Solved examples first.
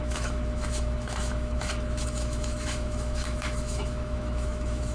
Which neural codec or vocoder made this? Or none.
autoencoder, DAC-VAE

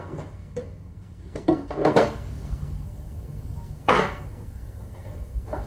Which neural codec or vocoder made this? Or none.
codec, SNAC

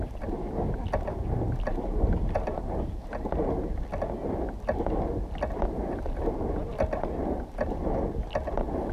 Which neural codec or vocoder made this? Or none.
none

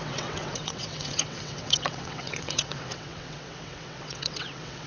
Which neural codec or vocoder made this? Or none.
vocoder, WaveNeXt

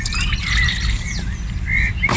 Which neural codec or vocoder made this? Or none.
none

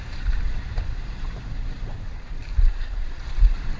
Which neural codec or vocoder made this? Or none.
vocoder, BigVGAN v2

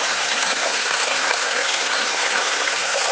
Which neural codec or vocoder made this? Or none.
codec, SNAC